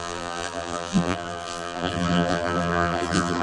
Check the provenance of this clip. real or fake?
fake